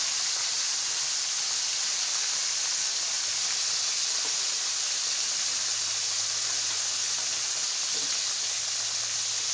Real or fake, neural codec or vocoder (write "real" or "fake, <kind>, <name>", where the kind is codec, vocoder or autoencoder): real